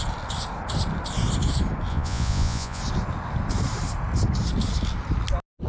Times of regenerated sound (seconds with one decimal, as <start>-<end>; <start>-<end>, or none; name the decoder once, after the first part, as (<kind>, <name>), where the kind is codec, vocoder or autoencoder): 1.9-2.8 (vocoder, Vocos)